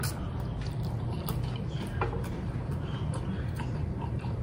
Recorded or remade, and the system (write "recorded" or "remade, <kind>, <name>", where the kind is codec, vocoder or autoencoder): recorded